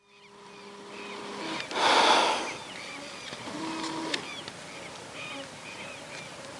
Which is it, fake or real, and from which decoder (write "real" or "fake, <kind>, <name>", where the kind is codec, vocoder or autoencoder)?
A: real